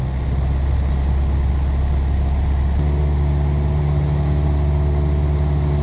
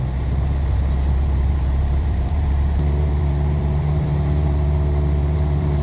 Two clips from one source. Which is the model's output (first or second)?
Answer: second